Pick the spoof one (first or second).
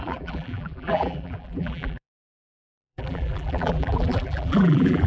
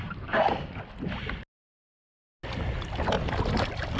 first